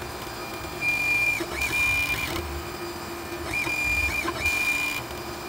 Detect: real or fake real